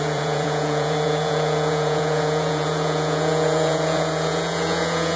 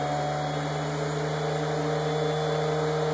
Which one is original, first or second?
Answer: second